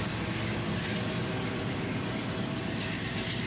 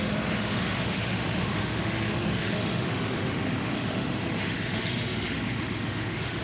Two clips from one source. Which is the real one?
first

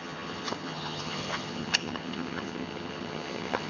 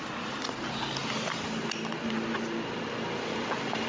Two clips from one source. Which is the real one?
second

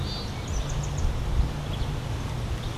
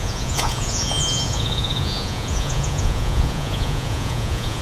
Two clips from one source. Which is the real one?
first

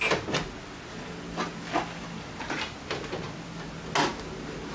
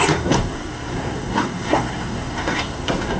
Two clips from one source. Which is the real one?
first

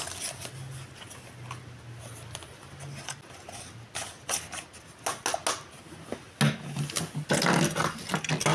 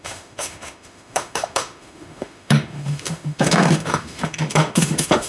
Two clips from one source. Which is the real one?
first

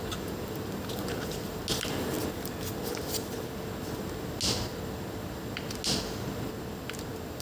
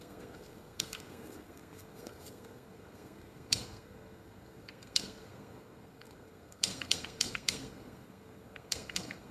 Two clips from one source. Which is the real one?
first